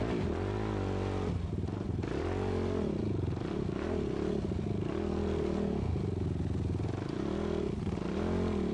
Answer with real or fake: real